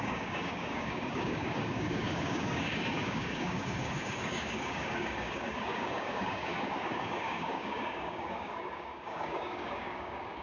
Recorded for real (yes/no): no